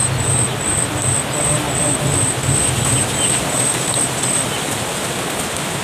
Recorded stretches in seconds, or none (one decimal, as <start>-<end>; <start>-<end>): 0.0-5.8